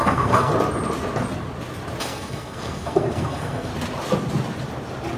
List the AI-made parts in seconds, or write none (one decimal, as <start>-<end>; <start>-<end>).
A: 0.0-0.5; 2.0-3.7